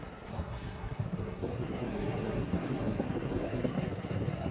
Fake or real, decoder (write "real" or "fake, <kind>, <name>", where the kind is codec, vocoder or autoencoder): fake, codec, SNAC